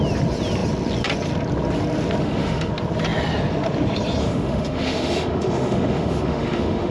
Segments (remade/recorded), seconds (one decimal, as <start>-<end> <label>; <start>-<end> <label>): 0.0-2.2 recorded; 2.2-2.7 remade; 2.7-4.2 recorded; 4.2-6.9 remade